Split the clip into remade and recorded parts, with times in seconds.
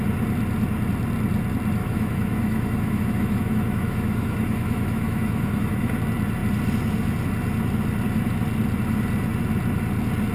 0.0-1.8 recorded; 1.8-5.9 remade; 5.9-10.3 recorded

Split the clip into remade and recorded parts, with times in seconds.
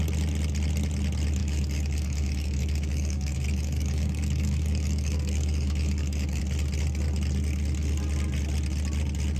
0.0-1.4 recorded; 1.4-6.4 remade; 6.4-9.4 recorded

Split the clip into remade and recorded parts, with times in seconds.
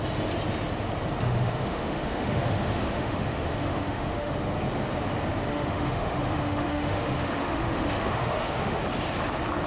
0.0-1.3 recorded; 1.3-4.3 remade; 4.3-5.5 recorded; 5.5-8.8 remade; 8.8-9.7 recorded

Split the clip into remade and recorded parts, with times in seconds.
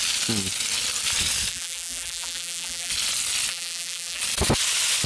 0.0-1.5 recorded; 1.5-2.9 remade; 2.9-3.5 recorded; 3.5-4.2 remade; 4.2-5.1 recorded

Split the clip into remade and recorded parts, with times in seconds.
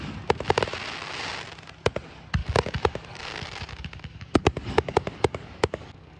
0.0-2.4 recorded; 2.4-6.2 remade